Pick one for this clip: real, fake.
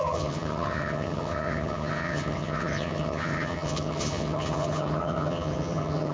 fake